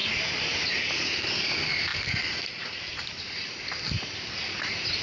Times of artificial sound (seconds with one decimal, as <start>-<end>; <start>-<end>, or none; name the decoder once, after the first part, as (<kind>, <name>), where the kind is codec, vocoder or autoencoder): none